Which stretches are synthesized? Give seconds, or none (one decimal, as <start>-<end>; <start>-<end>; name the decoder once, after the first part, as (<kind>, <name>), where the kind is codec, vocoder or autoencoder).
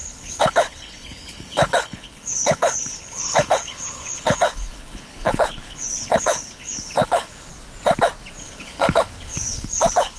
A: 0.0-7.5 (codec, HILCodec); 8.4-10.2